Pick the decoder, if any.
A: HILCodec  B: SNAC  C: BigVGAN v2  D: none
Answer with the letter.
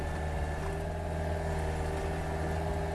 D